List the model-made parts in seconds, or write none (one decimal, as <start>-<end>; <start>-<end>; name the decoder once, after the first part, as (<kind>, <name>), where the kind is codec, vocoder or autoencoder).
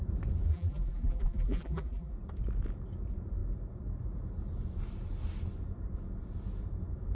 0.5-2.1 (vocoder, BigVGAN v2)